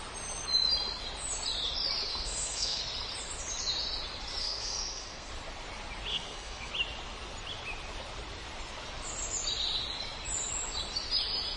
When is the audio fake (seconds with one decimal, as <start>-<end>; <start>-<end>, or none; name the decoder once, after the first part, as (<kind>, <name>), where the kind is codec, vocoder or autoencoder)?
2.1-2.8 (codec, SNAC); 4.4-5.3; 6.1-6.7